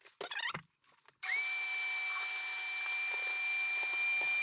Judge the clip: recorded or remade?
recorded